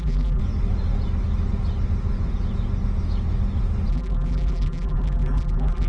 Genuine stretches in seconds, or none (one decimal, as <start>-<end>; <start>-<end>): 0.4-3.9

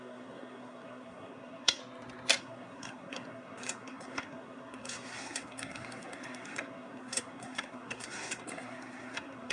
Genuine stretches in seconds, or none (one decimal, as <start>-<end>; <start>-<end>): 1.8-2.4

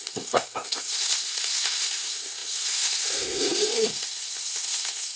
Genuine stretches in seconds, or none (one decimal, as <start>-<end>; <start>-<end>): none

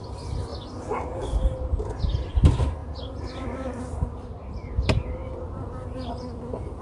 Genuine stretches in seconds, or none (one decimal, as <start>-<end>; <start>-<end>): 0.5-2.3; 5.2-6.1

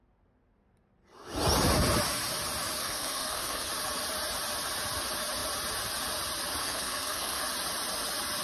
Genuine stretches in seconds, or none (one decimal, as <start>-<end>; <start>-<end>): 0.0-2.8; 3.7-6.6; 7.4-8.4

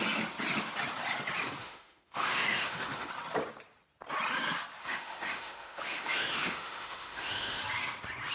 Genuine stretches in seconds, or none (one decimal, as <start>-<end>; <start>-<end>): 0.0-1.6; 3.1-4.8; 7.6-8.3

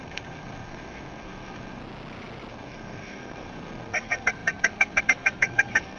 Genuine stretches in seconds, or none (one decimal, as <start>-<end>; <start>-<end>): 1.8-2.5